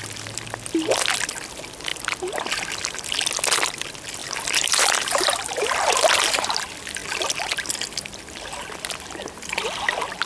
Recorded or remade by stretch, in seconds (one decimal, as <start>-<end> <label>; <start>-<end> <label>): 0.0-4.2 recorded; 4.2-6.4 remade; 6.4-10.3 recorded